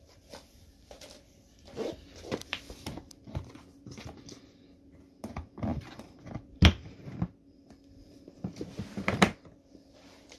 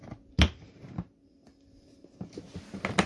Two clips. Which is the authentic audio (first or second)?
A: second